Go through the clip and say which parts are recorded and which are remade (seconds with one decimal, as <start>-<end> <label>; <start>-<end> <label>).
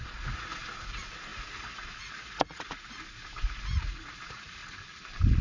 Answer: 0.0-4.6 remade; 4.6-5.4 recorded